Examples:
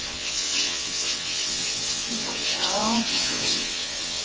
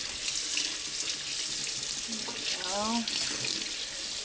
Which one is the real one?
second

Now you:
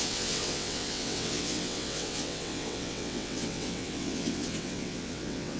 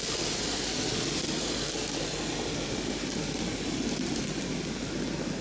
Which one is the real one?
second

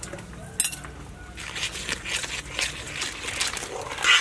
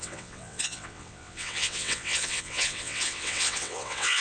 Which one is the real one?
first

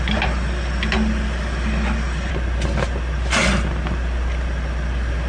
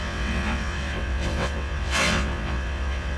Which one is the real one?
first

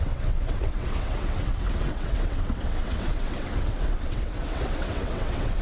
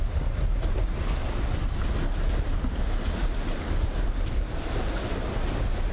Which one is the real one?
second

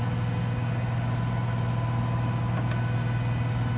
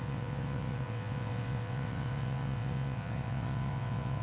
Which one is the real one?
first